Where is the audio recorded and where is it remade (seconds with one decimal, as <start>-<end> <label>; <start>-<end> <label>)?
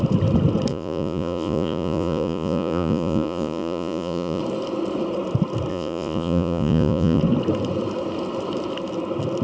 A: 0.0-0.7 recorded; 0.7-4.4 remade; 4.4-5.7 recorded; 5.7-7.2 remade; 7.2-9.4 recorded